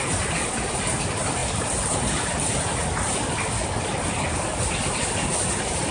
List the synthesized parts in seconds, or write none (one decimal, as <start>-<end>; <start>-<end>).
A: none